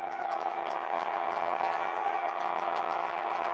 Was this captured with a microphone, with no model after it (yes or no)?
no